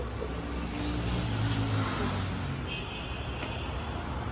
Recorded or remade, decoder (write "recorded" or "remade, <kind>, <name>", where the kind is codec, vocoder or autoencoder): recorded